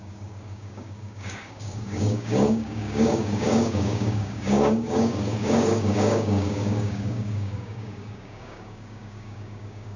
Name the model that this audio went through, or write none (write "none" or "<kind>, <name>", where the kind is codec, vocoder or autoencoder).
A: codec, DAC